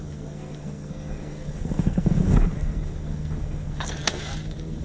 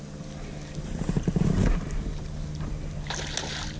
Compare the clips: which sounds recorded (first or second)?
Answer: second